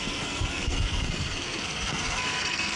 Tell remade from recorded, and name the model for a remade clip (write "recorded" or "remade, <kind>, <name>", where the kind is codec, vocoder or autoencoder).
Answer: remade, codec, SNAC